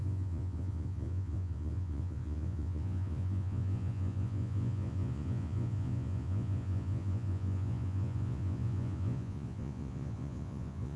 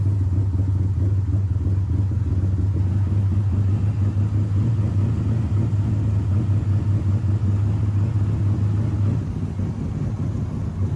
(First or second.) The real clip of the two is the second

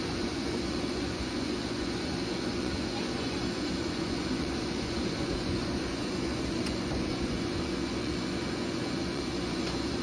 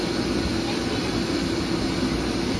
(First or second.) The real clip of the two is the second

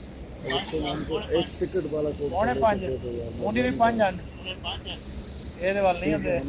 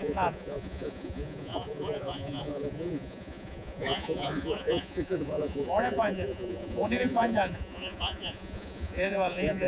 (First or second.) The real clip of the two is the first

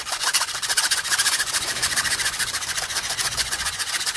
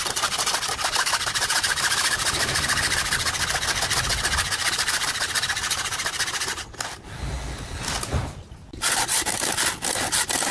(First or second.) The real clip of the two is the second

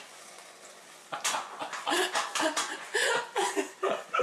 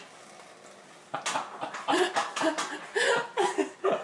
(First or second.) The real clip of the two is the second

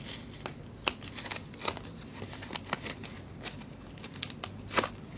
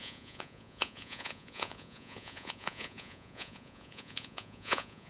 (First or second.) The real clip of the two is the first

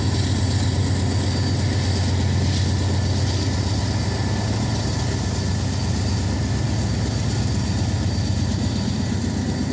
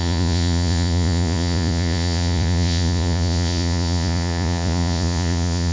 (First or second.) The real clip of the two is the first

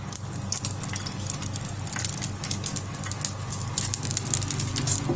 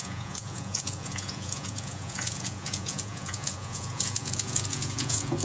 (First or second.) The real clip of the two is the first